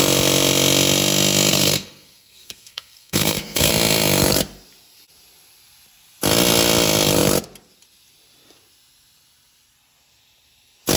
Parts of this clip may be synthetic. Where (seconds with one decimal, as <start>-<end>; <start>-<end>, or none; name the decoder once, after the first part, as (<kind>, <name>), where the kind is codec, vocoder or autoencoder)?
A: 1.5-3.7 (codec, SNAC)